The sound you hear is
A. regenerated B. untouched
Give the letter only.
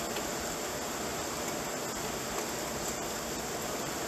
B